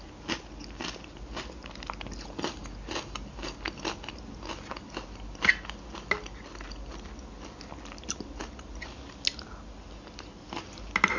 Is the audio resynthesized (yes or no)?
no